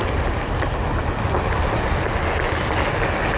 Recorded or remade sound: recorded